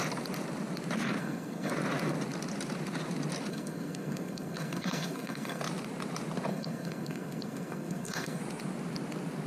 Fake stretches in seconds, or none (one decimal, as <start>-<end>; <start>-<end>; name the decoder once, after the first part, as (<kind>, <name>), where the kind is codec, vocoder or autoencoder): 1.2-1.7 (codec, SNAC); 3.5-5.6; 6.5-8.4